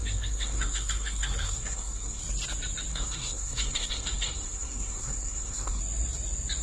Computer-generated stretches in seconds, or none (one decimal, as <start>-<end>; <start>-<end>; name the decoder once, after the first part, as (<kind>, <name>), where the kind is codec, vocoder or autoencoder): 0.0-2.2 (codec, SNAC); 2.9-5.8